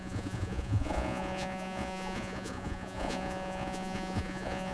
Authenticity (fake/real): fake